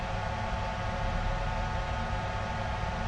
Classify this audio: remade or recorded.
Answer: recorded